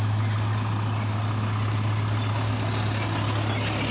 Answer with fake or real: real